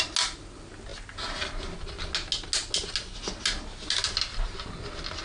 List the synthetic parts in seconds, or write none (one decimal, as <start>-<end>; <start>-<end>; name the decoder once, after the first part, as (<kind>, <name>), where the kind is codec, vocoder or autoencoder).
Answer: none